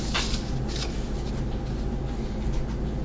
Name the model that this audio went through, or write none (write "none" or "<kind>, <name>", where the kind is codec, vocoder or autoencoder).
none